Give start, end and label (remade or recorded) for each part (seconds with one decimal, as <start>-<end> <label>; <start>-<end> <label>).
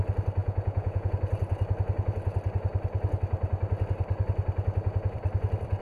0.0-0.4 recorded; 0.4-1.1 remade; 1.1-5.8 recorded